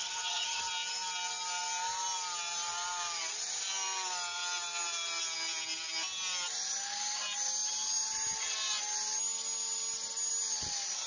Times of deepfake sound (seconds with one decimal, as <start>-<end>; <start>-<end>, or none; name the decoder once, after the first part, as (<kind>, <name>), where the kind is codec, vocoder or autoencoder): 0.0-0.7 (vocoder, HiFi-GAN)